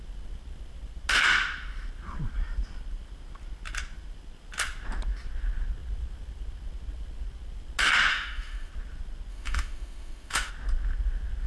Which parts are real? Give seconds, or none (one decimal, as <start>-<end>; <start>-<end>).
0.0-8.1; 8.7-9.3; 10.5-11.5